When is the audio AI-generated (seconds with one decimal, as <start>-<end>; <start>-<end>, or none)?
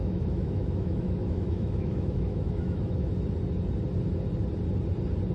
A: 0.0-3.1